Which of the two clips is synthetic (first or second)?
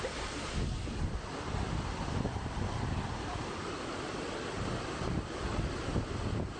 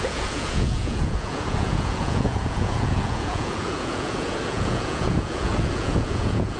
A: second